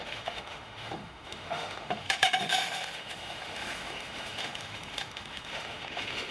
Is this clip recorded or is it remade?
remade